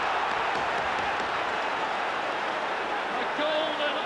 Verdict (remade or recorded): remade